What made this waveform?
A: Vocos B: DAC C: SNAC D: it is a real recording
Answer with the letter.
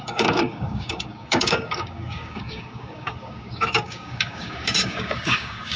B